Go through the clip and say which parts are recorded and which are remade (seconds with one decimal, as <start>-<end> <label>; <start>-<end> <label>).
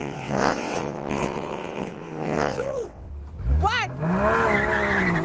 0.0-3.1 remade; 3.1-5.2 recorded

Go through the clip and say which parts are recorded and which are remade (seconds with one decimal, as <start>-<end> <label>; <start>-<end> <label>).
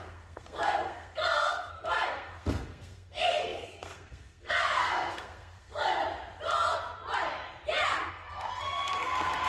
0.0-6.0 remade; 6.0-8.1 recorded; 8.1-9.5 remade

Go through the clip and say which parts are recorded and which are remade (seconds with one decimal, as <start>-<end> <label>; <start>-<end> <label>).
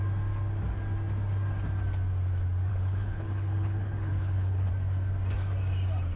0.0-2.7 recorded; 2.7-4.7 remade; 4.7-6.2 recorded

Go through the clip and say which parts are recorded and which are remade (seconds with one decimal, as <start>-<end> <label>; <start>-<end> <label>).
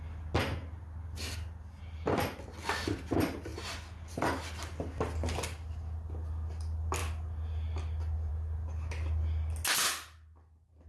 0.0-10.9 recorded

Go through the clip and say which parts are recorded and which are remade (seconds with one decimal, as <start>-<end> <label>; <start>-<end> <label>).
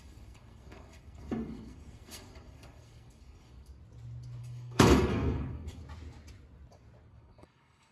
0.0-3.7 remade; 3.7-4.4 recorded; 4.4-5.8 remade; 5.8-7.1 recorded; 7.1-7.9 remade